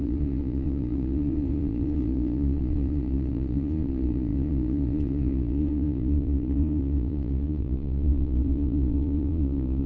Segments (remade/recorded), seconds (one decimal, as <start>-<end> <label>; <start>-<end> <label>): 0.0-9.9 remade